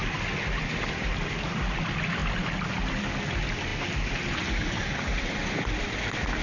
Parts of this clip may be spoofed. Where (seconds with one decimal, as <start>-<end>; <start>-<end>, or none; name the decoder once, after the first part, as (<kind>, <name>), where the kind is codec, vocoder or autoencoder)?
none